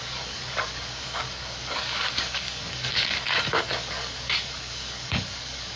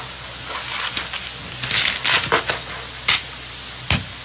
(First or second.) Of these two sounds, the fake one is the first